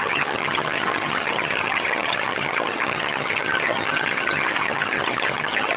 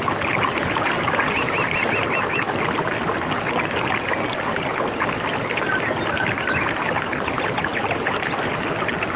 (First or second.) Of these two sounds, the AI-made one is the first